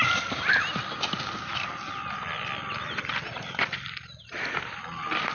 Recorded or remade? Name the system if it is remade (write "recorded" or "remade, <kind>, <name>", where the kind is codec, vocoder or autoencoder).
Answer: recorded